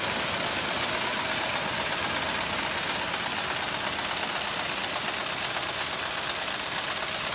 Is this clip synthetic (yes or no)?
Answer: no